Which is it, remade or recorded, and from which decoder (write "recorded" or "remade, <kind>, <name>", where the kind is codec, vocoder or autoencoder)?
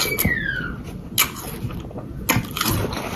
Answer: recorded